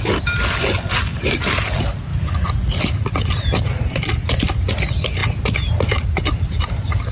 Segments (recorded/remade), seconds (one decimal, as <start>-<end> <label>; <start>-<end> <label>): 0.0-2.1 recorded; 2.1-2.8 remade; 2.8-7.1 recorded